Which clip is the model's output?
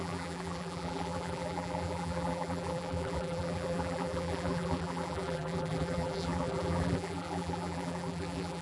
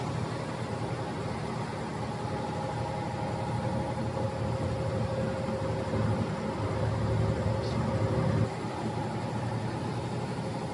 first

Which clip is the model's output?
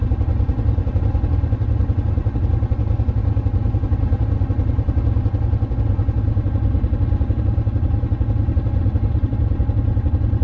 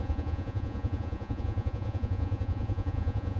second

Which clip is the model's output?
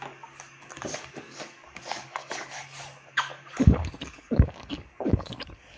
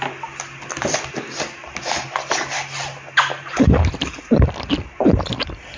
first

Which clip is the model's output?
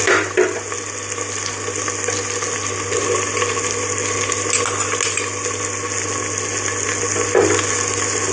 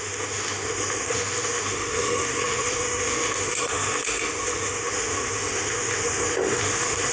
second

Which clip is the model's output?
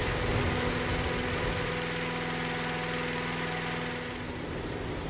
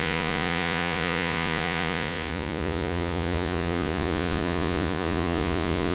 second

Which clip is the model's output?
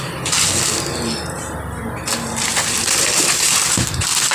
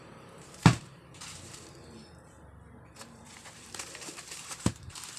second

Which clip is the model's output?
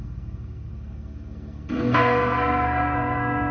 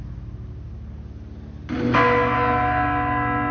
first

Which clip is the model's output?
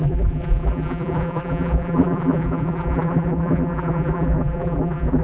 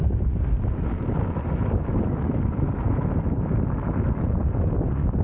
first